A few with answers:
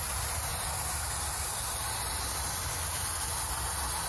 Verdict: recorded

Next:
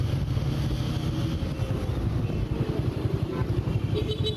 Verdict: recorded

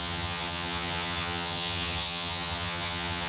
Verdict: remade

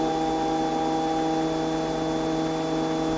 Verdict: recorded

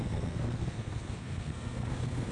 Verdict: remade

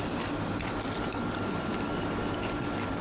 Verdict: recorded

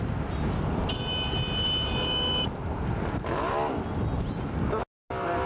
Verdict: recorded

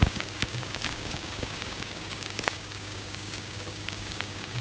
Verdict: remade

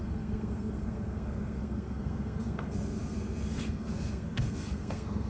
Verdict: remade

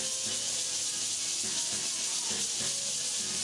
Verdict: recorded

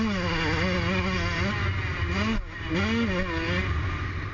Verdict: recorded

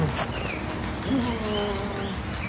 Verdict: recorded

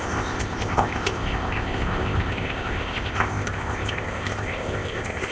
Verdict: remade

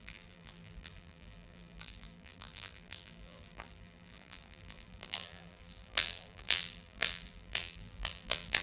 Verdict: remade